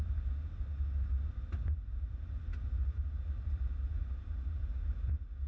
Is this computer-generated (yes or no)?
no